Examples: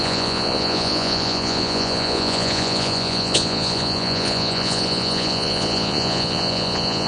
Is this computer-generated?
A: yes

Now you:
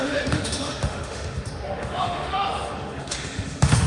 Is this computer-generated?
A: yes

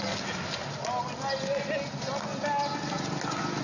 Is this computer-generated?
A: no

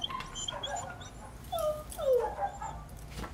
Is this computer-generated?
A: no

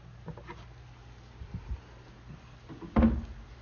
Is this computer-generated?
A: no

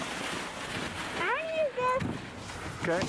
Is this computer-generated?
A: no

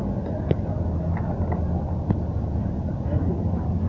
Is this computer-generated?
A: no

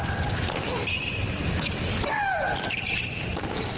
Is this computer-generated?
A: yes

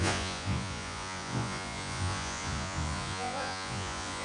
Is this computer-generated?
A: yes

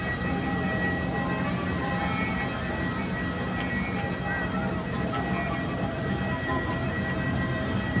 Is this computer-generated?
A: no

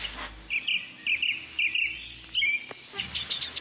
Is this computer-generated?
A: no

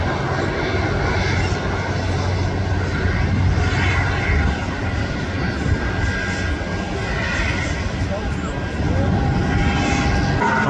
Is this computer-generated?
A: no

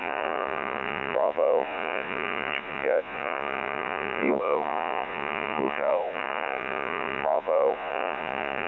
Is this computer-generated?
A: yes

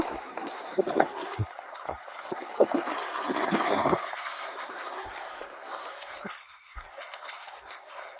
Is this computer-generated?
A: yes